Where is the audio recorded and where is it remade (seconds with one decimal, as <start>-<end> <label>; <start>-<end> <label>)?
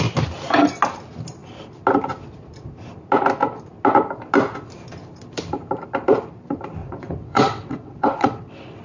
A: 0.0-6.8 recorded; 6.8-8.8 remade